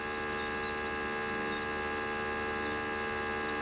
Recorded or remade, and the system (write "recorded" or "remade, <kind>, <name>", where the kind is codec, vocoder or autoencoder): recorded